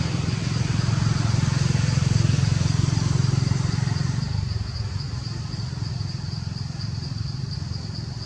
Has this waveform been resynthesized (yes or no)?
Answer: no